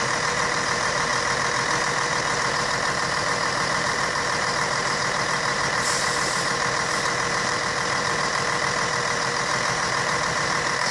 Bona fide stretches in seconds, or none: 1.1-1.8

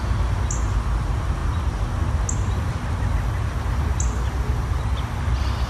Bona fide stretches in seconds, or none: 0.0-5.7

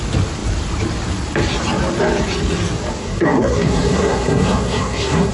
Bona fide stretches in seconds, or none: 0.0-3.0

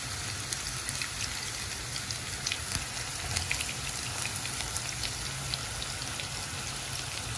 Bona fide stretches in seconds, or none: 0.0-7.4